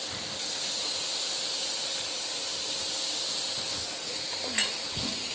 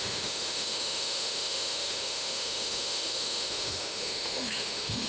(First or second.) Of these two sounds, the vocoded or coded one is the second